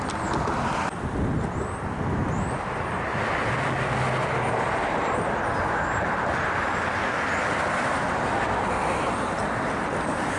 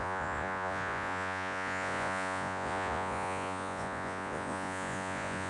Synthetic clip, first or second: second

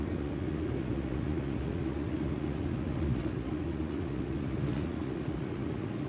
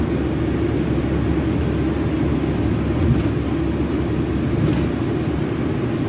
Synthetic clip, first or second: first